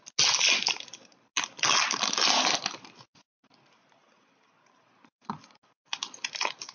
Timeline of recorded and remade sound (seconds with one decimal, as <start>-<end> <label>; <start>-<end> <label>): 0.0-6.7 recorded